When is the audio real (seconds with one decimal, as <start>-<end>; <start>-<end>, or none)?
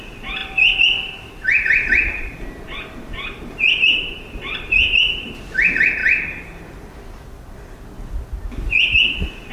0.0-0.4; 5.4-9.5